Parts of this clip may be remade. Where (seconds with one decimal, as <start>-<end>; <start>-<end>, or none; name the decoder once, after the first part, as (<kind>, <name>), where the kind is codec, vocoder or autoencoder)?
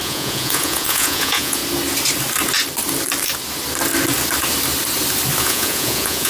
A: 0.0-1.6 (vocoder, Vocos); 5.4-6.3